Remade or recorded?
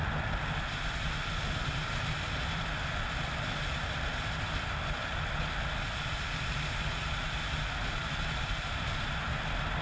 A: recorded